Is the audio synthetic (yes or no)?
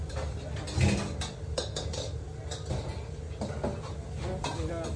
no